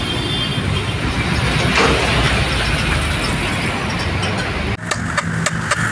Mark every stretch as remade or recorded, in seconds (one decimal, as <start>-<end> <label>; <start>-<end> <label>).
0.0-5.9 recorded